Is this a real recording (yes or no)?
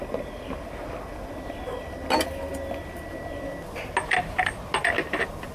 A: yes